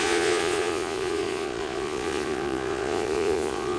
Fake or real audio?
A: fake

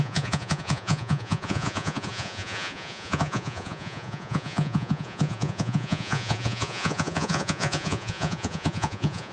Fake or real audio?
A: fake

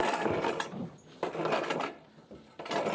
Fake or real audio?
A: real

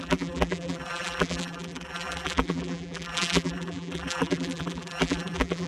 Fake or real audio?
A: fake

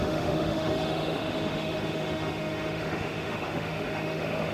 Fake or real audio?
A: fake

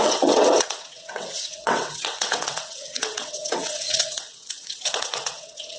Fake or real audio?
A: fake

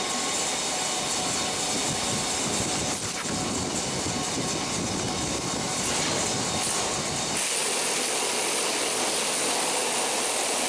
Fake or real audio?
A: real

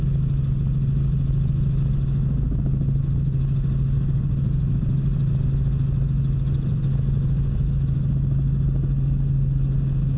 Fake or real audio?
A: real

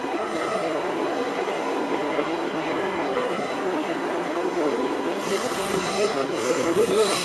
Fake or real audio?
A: fake